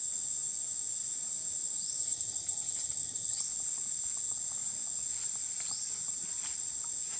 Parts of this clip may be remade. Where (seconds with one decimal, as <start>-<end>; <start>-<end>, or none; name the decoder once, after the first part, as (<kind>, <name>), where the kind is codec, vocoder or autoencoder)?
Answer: 2.0-3.4 (vocoder, HiFi-GAN)